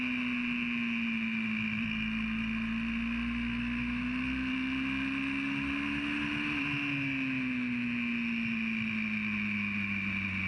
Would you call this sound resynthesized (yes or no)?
no